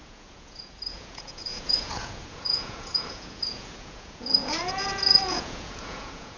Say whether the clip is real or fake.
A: fake